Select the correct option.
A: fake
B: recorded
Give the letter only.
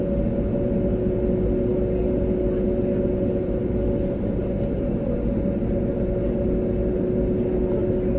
B